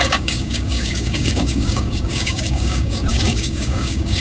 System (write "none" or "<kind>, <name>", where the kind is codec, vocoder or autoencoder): codec, DAC